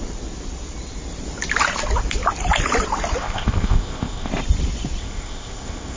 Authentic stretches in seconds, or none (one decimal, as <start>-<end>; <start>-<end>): 0.0-3.2; 4.3-5.0